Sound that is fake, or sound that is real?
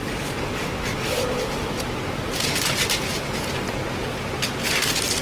real